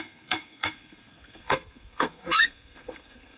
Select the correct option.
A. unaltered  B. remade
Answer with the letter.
B